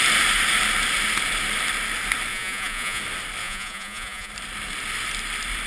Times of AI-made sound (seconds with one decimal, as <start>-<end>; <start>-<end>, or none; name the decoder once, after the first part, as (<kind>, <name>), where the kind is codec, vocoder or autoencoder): 2.3-3.0 (vocoder, Vocos); 3.4-4.3